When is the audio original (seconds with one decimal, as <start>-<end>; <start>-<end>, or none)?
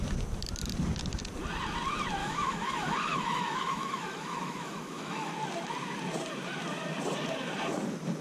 0.0-2.2; 5.3-8.2